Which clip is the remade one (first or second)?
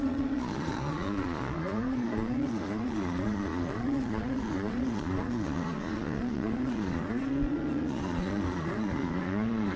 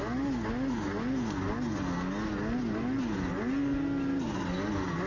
first